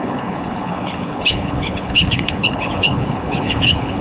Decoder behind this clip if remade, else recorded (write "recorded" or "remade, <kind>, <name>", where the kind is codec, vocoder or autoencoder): remade, codec, HILCodec